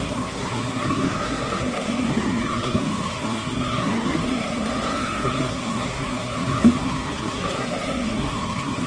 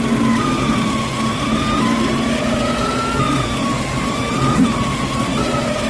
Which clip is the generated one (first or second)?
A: first